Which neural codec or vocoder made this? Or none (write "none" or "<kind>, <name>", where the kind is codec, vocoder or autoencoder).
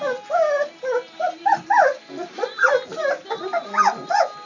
none